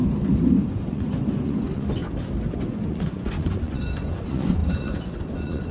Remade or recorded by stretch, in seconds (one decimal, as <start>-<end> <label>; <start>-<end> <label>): 0.0-0.7 recorded; 0.7-2.0 remade; 2.0-2.6 recorded; 2.6-5.7 remade